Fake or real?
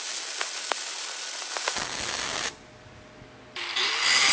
real